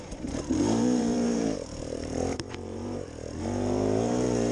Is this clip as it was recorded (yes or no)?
no